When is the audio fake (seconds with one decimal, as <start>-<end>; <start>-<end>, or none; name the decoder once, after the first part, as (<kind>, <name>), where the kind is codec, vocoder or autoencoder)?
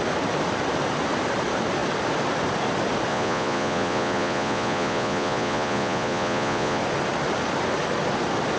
3.1-6.8 (vocoder, Vocos)